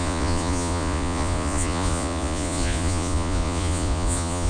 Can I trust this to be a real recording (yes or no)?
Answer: no